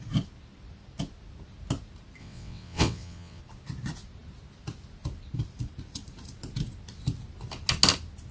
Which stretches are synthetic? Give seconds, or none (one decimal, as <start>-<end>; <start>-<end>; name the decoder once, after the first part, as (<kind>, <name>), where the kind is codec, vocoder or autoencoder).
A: 2.2-3.4 (vocoder, WaveNeXt)